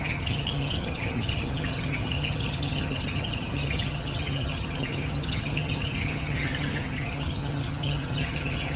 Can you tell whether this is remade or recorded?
remade